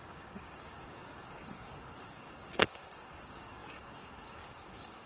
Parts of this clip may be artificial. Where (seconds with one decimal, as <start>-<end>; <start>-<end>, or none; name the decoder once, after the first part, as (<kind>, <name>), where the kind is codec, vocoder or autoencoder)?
0.0-5.1 (codec, DAC)